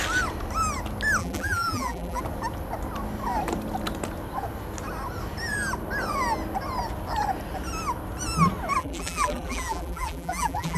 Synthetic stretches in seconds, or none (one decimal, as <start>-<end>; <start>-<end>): 1.2-2.2; 8.8-10.8